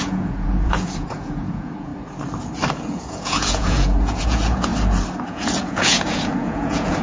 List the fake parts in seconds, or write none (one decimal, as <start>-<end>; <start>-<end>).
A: 0.0-1.9; 2.7-4.7; 5.3-7.0